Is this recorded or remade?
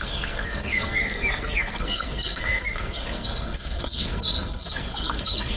remade